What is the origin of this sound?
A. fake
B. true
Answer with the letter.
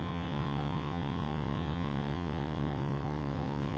A